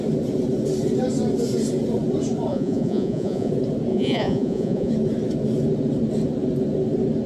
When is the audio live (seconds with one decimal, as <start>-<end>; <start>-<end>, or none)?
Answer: 0.0-2.5; 3.5-3.9; 4.9-7.3